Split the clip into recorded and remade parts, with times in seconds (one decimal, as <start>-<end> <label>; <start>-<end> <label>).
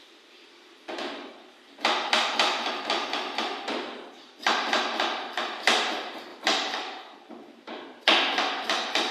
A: 0.0-9.1 recorded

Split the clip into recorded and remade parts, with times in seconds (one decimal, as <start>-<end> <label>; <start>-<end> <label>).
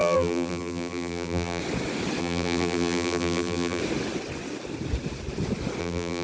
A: 0.0-1.6 remade; 1.6-2.2 recorded; 2.2-3.8 remade; 3.8-5.8 recorded; 5.8-6.2 remade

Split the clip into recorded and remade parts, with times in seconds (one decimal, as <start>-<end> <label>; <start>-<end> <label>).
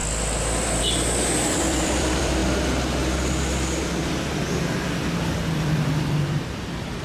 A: 0.0-0.8 recorded; 0.8-2.4 remade; 2.4-5.2 recorded; 5.2-7.0 remade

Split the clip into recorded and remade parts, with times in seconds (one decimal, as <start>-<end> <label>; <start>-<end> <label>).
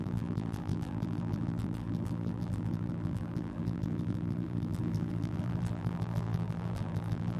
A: 0.0-7.4 remade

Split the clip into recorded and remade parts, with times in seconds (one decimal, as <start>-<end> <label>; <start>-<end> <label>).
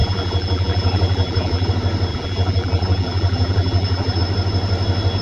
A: 0.0-1.7 remade; 1.7-2.1 recorded; 2.1-4.2 remade; 4.2-5.2 recorded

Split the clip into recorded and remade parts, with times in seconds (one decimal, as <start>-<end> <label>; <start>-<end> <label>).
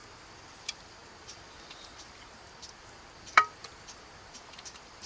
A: 0.0-0.6 recorded; 0.6-3.6 remade; 3.6-4.2 recorded; 4.2-5.1 remade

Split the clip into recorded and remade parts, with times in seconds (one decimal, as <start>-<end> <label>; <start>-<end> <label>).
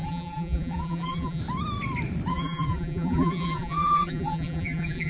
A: 0.0-1.4 remade; 1.4-2.3 recorded; 2.3-5.1 remade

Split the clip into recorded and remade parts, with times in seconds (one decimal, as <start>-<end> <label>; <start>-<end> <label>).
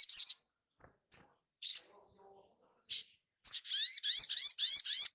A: 0.0-1.7 remade; 1.7-5.1 recorded